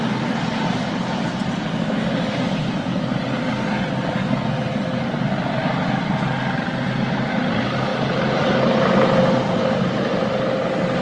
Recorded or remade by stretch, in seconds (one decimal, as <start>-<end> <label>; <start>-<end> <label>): 0.0-11.0 recorded